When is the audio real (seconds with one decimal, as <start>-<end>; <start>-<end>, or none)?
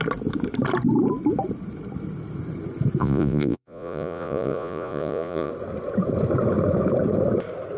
0.0-3.0; 5.5-7.8